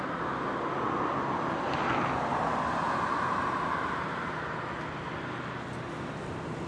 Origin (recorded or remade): recorded